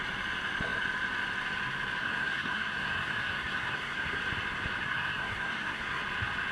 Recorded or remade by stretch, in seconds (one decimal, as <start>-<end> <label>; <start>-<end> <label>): 0.0-2.0 recorded; 2.0-4.2 remade; 4.2-4.8 recorded; 4.8-6.0 remade; 6.0-6.5 recorded